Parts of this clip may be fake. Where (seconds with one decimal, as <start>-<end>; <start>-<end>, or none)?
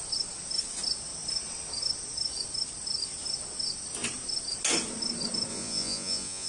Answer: 5.5-6.5